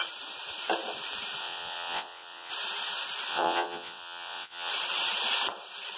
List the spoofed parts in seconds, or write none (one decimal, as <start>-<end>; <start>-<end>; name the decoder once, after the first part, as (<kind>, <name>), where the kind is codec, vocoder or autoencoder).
1.4-2.5 (vocoder, WaveNeXt); 3.3-4.7